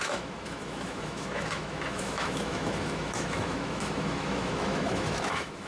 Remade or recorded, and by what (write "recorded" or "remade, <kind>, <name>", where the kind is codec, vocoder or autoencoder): remade, autoencoder, DAC-VAE